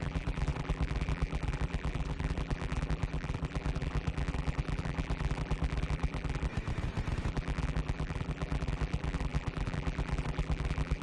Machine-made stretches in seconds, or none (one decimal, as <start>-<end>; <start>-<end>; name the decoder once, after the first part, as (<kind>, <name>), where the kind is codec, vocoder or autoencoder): 0.0-6.5 (vocoder, BigVGAN v2); 7.3-11.0